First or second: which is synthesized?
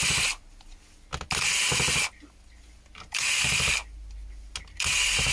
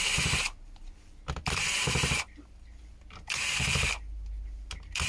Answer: second